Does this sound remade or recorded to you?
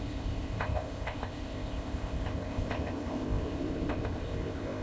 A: remade